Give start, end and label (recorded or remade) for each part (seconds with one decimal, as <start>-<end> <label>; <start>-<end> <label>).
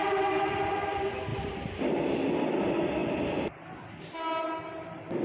0.0-5.2 recorded